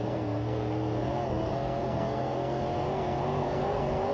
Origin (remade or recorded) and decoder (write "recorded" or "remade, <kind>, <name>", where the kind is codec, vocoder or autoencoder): remade, codec, SNAC